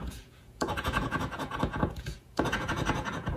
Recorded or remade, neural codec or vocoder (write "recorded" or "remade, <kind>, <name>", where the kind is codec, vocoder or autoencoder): remade, vocoder, Vocos